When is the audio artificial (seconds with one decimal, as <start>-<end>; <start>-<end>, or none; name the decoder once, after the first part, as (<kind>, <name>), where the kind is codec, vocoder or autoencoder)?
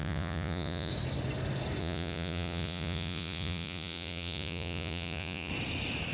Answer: 0.0-0.9 (vocoder, Vocos); 1.8-5.5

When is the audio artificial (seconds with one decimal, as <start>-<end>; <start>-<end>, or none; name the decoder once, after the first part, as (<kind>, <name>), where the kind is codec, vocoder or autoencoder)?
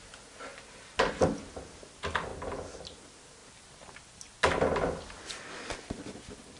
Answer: none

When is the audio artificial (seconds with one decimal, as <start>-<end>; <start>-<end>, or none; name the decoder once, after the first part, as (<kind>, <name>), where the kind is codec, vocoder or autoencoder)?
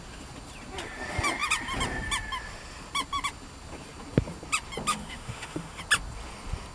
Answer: 4.9-5.8 (autoencoder, DAC-VAE)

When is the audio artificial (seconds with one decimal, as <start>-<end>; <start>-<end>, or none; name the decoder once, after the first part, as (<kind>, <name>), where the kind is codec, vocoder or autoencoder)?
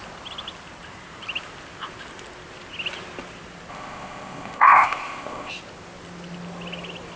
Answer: 3.7-5.5 (codec, ZipCodec)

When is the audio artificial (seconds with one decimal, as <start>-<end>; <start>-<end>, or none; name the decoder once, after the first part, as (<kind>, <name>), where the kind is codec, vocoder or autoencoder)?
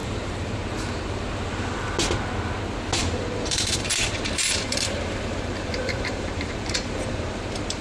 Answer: 0.0-1.8 (vocoder, BigVGAN v2); 3.0-7.8